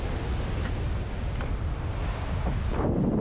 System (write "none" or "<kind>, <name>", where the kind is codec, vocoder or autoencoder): none